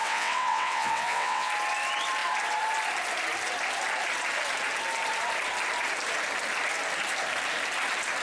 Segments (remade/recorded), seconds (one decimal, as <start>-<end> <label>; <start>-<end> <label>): 0.0-1.5 remade; 1.5-8.2 recorded